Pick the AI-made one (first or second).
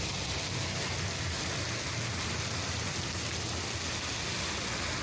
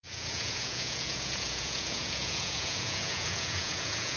second